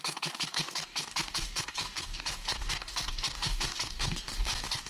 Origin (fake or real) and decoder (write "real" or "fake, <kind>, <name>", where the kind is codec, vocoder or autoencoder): fake, codec, DAC